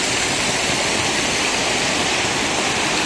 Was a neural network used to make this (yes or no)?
no